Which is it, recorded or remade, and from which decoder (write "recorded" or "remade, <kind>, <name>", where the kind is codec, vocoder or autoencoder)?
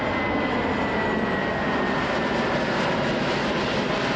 recorded